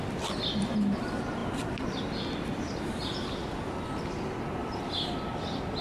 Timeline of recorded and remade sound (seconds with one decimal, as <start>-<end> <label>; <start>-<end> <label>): 0.0-4.6 recorded; 4.6-5.1 remade; 5.1-5.8 recorded